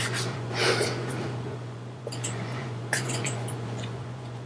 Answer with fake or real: fake